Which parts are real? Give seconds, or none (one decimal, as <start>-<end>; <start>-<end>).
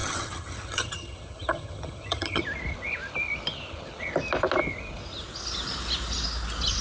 2.4-6.8